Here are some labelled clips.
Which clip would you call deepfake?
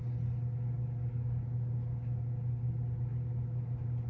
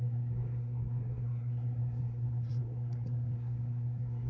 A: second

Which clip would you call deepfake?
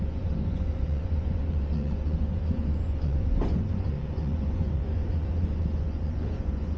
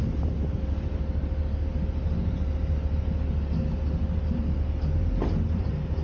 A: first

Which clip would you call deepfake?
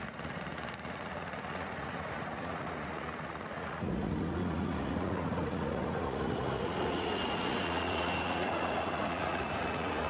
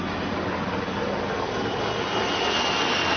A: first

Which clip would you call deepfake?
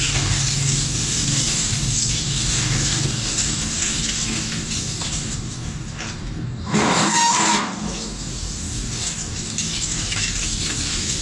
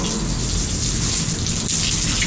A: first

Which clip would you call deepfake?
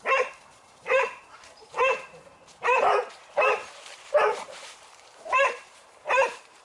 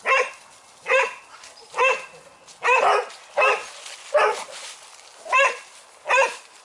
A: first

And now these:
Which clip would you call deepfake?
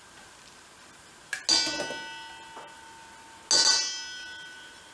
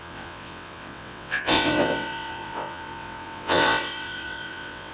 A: second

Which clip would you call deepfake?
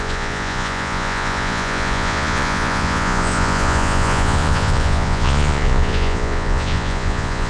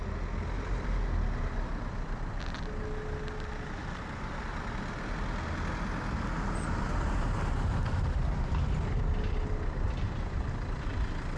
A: first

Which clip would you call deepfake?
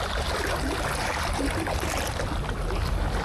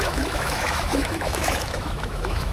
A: second